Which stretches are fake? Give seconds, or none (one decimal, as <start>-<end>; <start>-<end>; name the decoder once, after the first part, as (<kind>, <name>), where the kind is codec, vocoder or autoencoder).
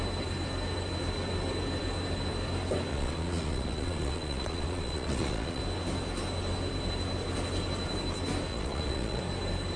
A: 2.9-5.6 (vocoder, Vocos); 8.5-9.2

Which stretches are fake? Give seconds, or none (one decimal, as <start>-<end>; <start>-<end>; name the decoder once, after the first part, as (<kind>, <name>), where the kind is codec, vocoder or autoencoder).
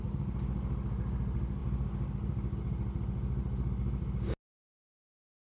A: none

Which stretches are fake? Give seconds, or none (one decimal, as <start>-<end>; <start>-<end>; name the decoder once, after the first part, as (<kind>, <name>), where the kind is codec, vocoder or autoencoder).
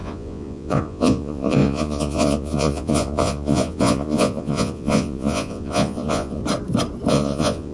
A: 0.0-6.4 (vocoder, Vocos); 7.1-7.7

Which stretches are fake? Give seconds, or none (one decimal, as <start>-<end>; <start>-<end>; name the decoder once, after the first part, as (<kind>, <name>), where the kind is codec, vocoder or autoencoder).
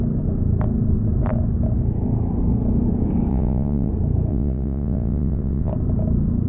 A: 3.3-3.9 (vocoder, WaveNeXt); 4.3-5.7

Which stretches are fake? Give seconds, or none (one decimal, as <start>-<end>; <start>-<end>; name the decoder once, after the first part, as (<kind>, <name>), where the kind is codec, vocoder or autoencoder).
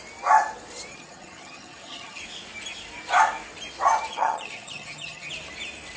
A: 0.9-2.2 (vocoder, HiFi-GAN); 4.1-5.3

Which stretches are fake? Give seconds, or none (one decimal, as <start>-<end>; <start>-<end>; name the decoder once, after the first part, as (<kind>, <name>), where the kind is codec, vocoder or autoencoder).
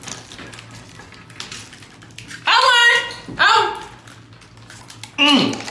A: none